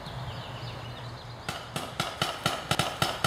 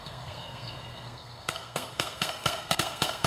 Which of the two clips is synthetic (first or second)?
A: second